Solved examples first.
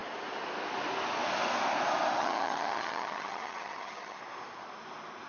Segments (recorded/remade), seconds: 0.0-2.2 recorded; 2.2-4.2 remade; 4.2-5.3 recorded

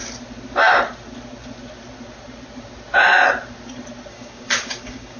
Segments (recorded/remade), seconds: 0.0-4.1 recorded; 4.1-5.2 remade

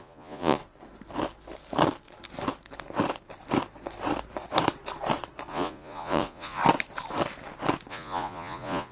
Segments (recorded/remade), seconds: 0.0-0.6 remade; 0.6-5.5 recorded; 5.5-6.6 remade; 6.6-7.9 recorded; 7.9-8.9 remade

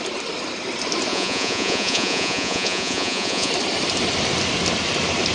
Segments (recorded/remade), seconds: 0.0-1.1 recorded; 1.1-3.5 remade; 3.5-5.3 recorded

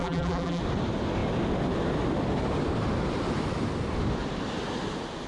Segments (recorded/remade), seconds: 0.0-0.6 remade; 0.6-5.3 recorded